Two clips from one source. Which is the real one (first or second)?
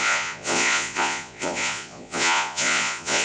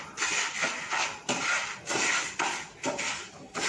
second